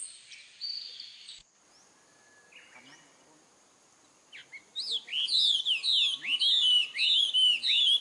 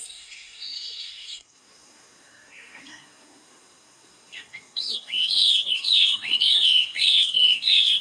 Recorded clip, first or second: first